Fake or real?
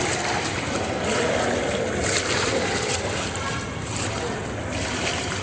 real